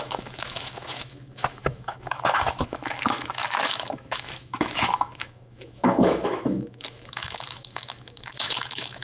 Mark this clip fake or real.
fake